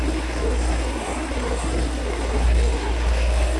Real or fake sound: fake